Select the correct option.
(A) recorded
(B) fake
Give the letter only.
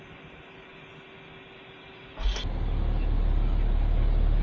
A